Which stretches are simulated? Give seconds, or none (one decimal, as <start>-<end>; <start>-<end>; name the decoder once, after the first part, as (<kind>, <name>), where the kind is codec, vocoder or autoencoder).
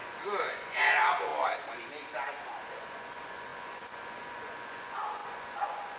0.0-1.3 (vocoder, Vocos); 2.7-6.0